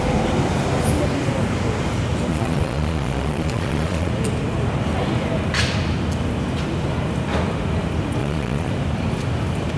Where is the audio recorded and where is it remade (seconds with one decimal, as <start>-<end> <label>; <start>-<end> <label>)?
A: 0.0-2.3 recorded; 2.3-4.1 remade; 4.1-8.2 recorded; 8.2-8.7 remade; 8.7-9.8 recorded